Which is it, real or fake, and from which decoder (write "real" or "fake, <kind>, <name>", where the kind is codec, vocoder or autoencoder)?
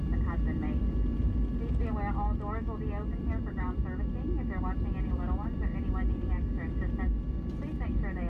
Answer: real